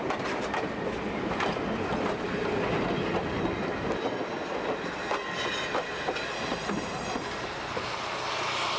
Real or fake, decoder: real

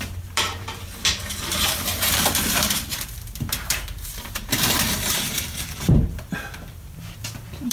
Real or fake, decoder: fake, vocoder, BigVGAN v2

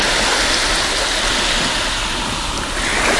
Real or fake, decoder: real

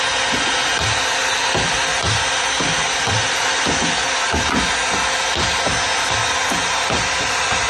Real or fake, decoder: real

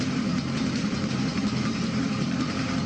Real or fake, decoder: fake, vocoder, BigVGAN v2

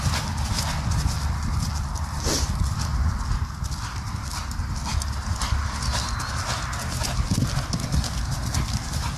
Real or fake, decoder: real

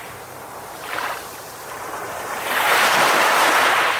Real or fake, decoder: fake, vocoder, BigVGAN v2